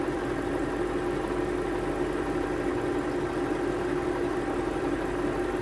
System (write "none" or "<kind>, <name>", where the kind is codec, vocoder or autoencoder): none